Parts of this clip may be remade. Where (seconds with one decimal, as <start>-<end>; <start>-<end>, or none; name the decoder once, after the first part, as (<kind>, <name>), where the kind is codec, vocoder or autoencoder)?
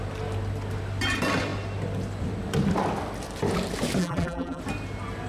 4.0-4.6 (vocoder, BigVGAN v2)